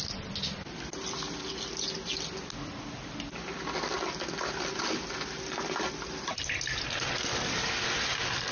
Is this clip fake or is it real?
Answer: real